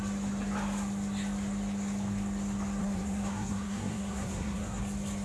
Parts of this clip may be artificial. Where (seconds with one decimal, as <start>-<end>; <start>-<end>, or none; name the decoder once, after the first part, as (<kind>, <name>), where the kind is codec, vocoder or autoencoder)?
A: 2.8-4.8 (codec, SNAC)

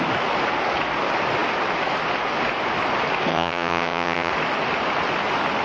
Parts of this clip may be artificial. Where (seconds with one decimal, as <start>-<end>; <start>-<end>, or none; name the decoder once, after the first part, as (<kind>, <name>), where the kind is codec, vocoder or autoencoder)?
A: 3.3-4.3 (vocoder, HiFi-GAN)